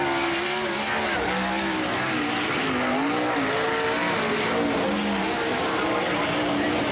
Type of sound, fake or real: real